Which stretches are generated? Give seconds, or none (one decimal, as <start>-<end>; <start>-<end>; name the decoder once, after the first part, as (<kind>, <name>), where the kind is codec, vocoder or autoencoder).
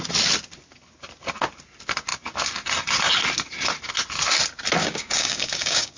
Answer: 4.8-6.0 (codec, DAC)